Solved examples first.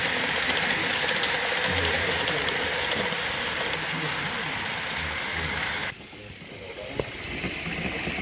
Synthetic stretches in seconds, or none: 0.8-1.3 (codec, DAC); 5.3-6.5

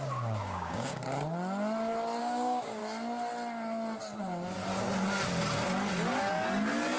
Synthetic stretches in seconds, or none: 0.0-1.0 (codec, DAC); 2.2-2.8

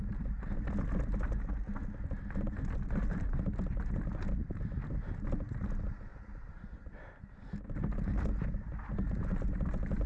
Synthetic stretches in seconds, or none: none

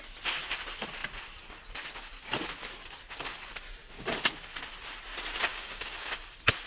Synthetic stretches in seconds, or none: 5.5-6.1 (codec, DAC)